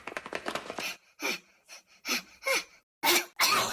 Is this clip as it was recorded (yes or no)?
yes